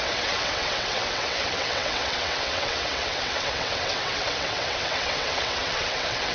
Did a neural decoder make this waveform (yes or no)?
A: yes